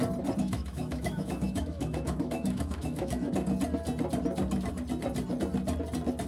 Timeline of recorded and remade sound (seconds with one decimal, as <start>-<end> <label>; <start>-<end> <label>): 0.0-0.4 recorded; 0.4-3.3 remade; 3.3-6.3 recorded